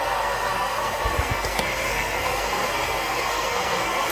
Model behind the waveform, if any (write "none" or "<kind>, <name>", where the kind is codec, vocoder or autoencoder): codec, SNAC